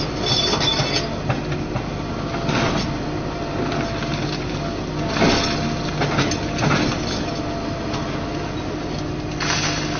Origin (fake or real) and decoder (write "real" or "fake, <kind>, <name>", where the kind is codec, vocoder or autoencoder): real